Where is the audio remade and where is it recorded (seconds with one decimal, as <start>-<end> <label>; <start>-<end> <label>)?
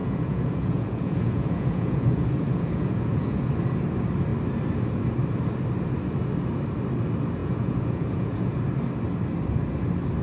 0.0-3.5 remade; 3.5-7.4 recorded; 7.4-8.6 remade; 8.6-10.2 recorded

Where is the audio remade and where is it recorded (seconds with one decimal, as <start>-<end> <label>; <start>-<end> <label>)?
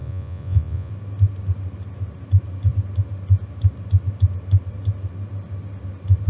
0.0-0.9 remade; 0.9-6.3 recorded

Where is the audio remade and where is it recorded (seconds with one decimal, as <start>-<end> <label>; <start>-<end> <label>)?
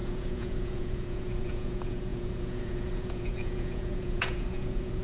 0.0-5.0 remade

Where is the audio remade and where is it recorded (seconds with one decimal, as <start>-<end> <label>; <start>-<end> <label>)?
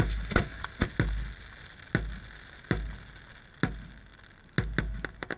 0.0-5.4 recorded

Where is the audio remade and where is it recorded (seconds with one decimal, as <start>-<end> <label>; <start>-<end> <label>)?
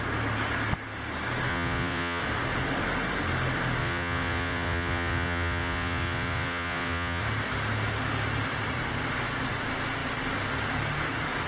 0.0-1.5 recorded; 1.5-2.2 remade; 2.2-3.8 recorded; 3.8-7.2 remade; 7.2-11.5 recorded